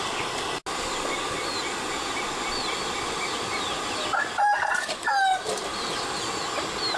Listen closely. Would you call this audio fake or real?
real